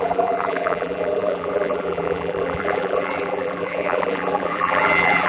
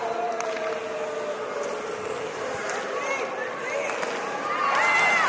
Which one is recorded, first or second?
second